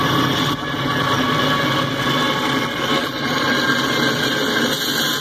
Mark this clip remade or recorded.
recorded